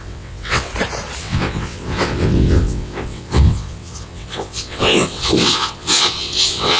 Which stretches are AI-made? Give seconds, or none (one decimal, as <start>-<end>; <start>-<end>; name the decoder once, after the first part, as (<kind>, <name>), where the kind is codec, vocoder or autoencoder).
0.0-0.7 (vocoder, WaveNeXt); 1.2-6.8